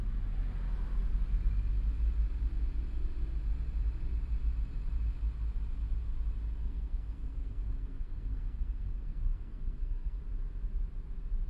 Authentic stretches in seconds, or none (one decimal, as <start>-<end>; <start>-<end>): 0.0-6.6; 10.2-11.5